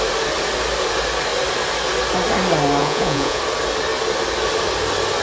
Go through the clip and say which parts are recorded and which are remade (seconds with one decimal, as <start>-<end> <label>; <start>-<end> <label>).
0.0-2.8 recorded; 2.8-3.4 remade; 3.4-5.2 recorded